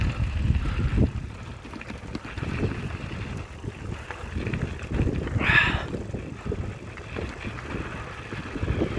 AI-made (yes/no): no